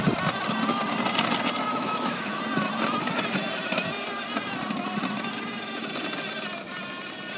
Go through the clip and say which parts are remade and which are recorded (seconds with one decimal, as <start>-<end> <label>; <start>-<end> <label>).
0.0-1.7 recorded; 1.7-2.4 remade; 2.4-7.4 recorded